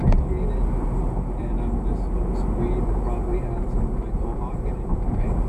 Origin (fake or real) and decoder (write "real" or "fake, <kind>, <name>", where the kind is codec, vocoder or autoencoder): real